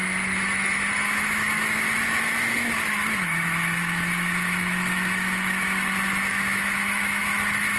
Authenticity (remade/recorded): remade